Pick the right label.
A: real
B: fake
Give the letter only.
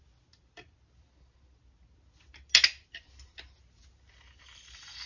A